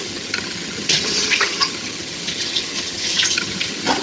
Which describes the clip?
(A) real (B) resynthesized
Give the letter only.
B